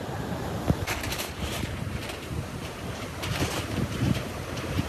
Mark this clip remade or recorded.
remade